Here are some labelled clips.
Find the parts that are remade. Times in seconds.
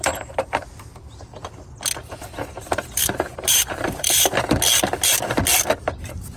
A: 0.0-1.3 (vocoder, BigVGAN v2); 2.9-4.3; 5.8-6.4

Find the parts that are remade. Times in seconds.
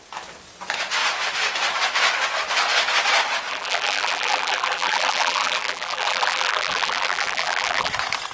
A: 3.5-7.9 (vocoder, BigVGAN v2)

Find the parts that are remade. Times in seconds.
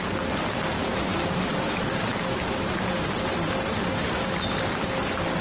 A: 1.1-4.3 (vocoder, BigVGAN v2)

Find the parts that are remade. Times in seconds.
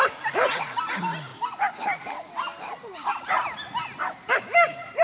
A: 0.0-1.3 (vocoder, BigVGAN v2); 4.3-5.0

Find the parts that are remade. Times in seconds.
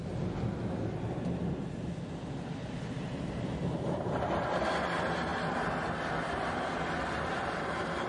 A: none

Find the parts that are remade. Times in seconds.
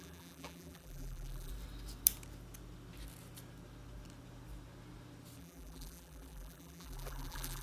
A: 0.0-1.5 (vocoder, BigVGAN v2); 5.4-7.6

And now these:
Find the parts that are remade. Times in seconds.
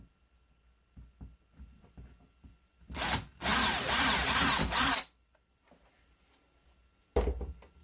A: 3.5-5.0 (vocoder, BigVGAN v2)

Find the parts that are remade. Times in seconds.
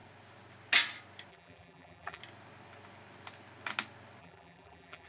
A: 1.3-2.2 (vocoder, BigVGAN v2); 4.2-5.1